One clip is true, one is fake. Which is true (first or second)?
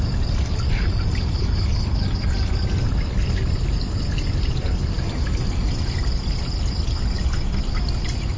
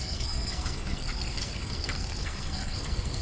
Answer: first